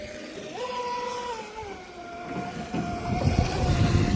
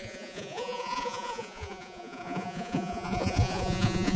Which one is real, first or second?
first